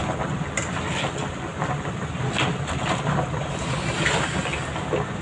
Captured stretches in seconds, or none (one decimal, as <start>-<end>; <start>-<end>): 0.0-5.2